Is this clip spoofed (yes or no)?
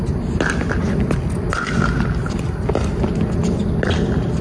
no